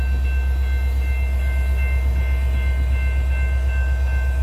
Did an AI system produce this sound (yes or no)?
no